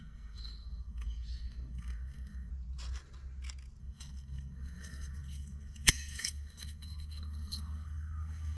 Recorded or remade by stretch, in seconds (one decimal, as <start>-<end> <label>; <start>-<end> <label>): 0.0-2.5 remade; 2.5-3.8 recorded; 3.8-8.6 remade